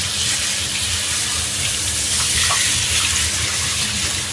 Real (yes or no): no